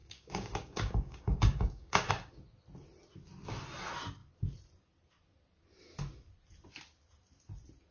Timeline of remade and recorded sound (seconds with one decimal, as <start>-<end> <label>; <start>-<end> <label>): 0.0-2.1 remade; 2.1-7.9 recorded